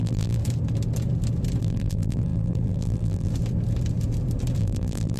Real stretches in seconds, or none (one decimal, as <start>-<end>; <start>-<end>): 0.4-1.6; 3.3-4.6